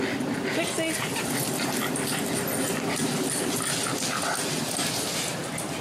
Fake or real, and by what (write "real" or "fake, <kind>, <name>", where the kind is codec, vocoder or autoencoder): real